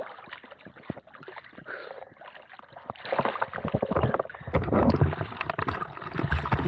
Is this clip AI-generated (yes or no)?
no